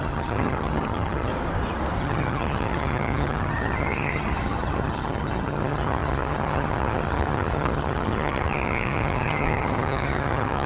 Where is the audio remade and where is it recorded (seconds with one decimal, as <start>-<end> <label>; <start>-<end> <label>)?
0.0-1.3 remade; 1.3-2.0 recorded; 2.0-10.7 remade

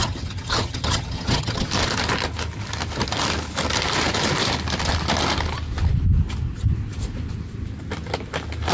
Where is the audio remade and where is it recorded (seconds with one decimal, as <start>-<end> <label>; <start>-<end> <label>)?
0.0-1.7 remade; 1.7-8.7 recorded